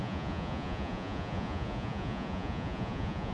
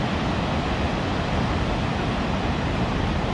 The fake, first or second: first